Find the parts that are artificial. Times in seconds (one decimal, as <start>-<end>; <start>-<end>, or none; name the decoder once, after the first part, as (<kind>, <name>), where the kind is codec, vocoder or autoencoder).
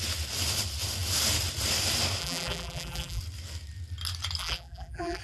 2.2-3.2 (vocoder, BigVGAN v2); 4.4-5.2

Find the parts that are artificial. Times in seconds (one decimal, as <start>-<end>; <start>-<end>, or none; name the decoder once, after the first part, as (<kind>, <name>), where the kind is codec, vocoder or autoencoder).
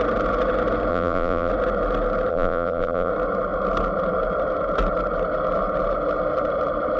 0.9-1.5 (vocoder, BigVGAN v2); 2.3-3.1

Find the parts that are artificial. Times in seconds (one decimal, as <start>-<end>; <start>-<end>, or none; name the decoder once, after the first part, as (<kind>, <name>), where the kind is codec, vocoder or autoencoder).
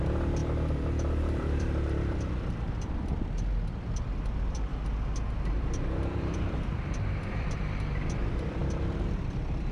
0.0-4.7 (vocoder, BigVGAN v2); 5.5-9.7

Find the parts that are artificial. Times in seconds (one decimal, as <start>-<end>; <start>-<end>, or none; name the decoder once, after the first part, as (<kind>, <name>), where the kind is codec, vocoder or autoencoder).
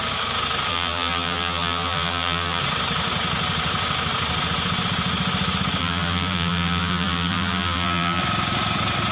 0.7-2.6 (vocoder, BigVGAN v2); 5.8-8.2